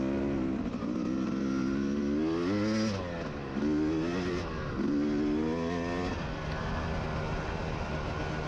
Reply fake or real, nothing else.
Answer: real